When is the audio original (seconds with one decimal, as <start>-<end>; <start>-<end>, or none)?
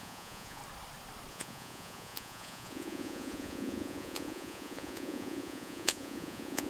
0.6-1.3